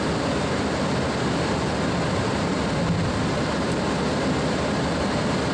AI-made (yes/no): no